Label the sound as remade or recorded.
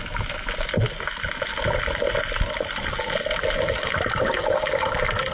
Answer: recorded